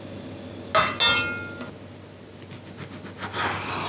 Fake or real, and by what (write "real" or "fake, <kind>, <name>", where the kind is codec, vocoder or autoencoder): real